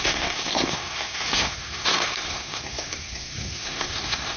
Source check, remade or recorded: remade